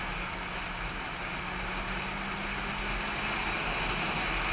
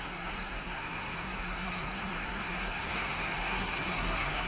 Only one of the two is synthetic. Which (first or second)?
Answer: second